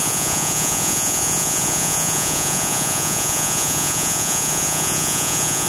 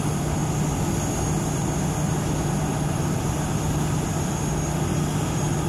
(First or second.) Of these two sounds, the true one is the second